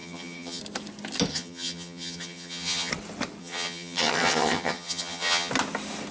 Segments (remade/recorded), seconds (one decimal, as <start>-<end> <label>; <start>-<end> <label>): 0.0-0.6 remade; 0.6-1.3 recorded; 1.3-2.9 remade; 2.9-3.4 recorded; 3.4-5.5 remade; 5.5-6.1 recorded